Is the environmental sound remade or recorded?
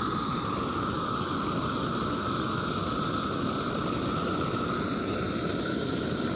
recorded